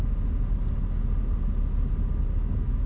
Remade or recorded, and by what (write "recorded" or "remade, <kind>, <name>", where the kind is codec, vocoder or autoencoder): recorded